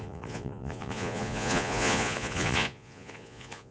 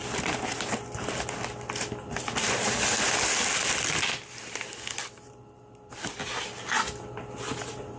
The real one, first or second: second